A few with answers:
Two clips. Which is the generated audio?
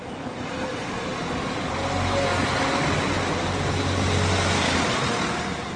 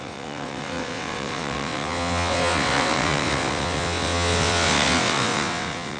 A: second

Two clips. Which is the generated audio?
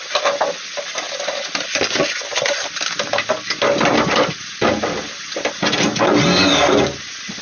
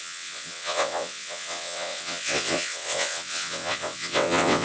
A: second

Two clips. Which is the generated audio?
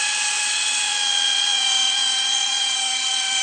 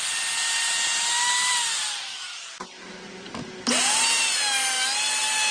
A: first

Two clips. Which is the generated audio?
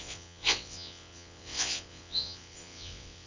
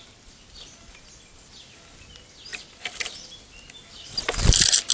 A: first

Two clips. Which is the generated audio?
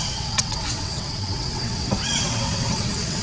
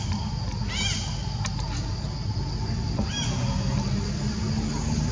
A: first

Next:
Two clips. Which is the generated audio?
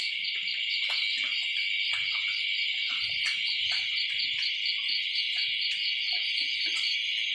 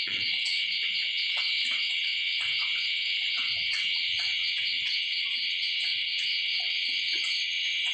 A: second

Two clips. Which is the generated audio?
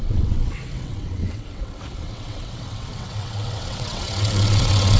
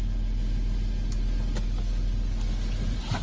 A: first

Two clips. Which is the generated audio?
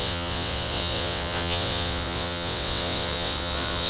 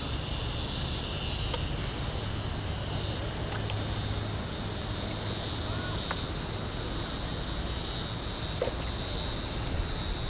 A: first